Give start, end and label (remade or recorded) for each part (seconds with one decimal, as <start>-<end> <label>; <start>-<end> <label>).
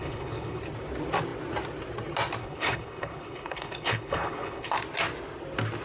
0.0-0.6 remade; 0.6-2.4 recorded; 2.4-4.7 remade; 4.7-5.8 recorded